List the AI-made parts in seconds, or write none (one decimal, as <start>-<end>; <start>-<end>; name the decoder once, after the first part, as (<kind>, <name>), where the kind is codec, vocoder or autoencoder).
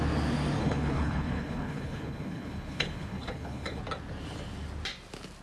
0.6-3.8 (codec, HILCodec)